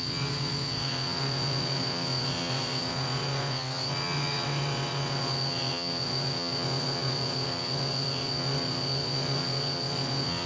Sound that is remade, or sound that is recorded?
remade